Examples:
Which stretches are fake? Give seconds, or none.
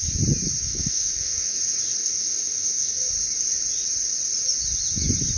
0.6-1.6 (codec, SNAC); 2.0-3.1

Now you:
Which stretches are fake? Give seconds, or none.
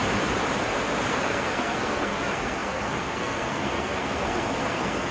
1.1-5.1 (codec, SNAC)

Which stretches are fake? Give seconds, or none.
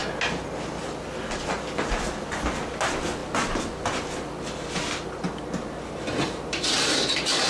none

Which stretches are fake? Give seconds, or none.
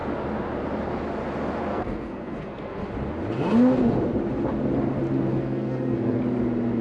1.7-2.9 (codec, SNAC); 5.3-6.2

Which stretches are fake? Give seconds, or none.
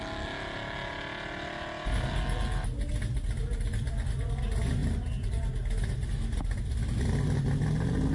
none